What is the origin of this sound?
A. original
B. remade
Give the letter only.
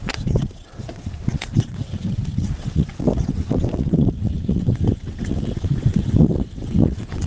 B